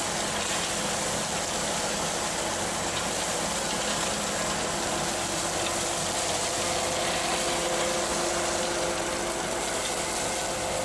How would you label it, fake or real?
real